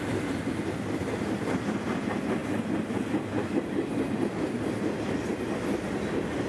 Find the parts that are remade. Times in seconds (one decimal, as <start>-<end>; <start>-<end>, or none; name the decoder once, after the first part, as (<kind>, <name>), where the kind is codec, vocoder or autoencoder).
none